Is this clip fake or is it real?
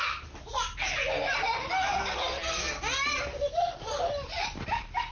real